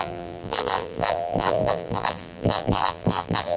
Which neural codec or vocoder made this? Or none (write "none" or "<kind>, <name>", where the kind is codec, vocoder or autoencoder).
vocoder, BigVGAN v2